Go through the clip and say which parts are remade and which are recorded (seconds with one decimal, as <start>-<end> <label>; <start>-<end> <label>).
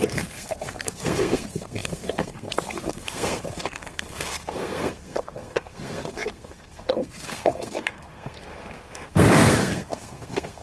0.0-10.6 remade